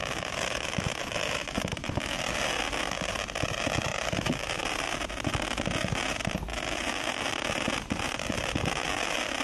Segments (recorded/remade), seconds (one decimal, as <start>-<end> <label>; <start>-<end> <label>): 0.0-2.2 remade; 2.2-3.9 recorded; 3.9-4.6 remade; 4.6-6.5 recorded; 6.5-7.2 remade; 7.2-9.4 recorded